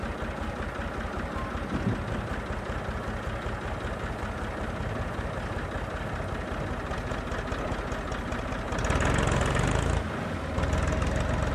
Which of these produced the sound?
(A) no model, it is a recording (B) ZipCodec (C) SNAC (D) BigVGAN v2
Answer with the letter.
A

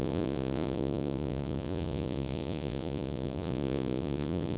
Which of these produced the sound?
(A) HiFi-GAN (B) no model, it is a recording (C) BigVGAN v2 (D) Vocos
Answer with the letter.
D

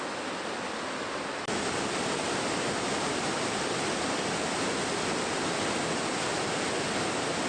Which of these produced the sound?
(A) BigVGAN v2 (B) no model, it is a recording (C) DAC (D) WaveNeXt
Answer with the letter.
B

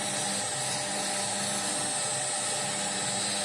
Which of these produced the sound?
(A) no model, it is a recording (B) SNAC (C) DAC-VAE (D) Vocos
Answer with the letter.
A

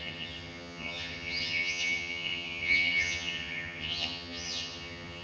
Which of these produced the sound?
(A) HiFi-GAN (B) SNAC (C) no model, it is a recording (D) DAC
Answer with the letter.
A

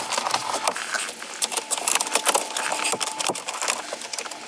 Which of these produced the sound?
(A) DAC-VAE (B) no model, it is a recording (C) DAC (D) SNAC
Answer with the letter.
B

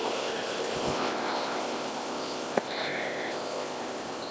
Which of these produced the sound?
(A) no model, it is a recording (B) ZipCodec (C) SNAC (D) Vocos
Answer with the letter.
B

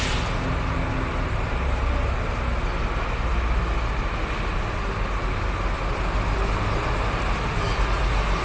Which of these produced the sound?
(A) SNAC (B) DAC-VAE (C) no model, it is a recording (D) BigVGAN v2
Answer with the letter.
C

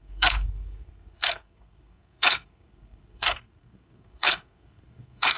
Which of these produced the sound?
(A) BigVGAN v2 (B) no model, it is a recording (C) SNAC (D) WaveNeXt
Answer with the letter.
C